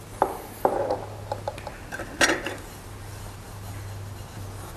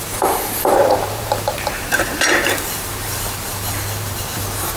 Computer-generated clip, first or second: second